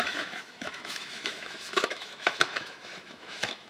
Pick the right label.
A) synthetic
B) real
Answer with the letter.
A